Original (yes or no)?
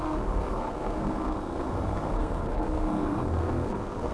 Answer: no